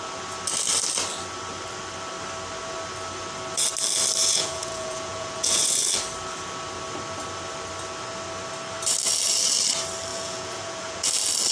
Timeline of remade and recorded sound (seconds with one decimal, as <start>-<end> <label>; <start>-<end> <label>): 0.0-4.2 recorded; 4.2-5.9 remade; 5.9-10.1 recorded; 10.1-11.1 remade; 11.1-11.5 recorded